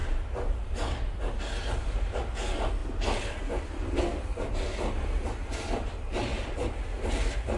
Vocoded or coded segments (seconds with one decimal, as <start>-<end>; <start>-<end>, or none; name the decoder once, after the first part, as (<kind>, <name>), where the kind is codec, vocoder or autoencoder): 6.3-7.6 (vocoder, BigVGAN v2)